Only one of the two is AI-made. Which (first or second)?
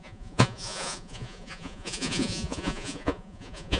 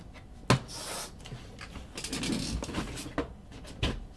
first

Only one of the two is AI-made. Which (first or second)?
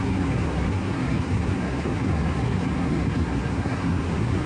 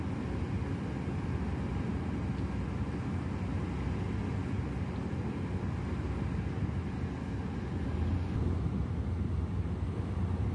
first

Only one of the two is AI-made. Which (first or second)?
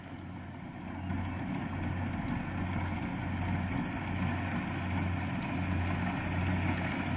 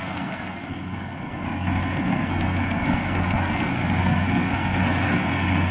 second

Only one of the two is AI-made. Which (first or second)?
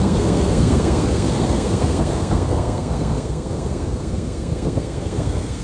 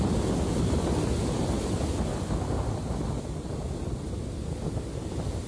first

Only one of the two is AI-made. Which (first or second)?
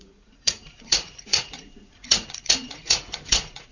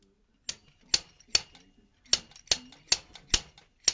first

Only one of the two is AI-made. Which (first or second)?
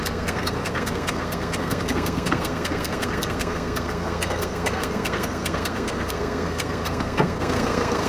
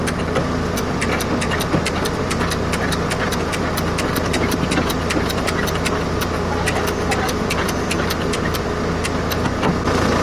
first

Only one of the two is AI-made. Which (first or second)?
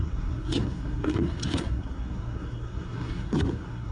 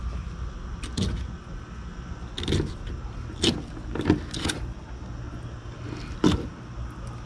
first